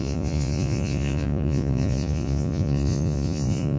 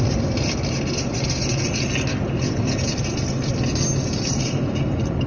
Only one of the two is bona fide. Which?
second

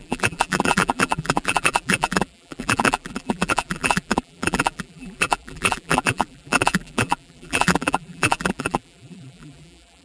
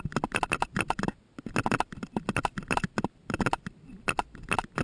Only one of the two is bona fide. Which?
second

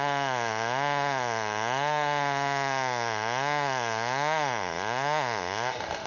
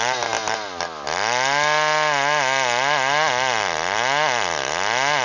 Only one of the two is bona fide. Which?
second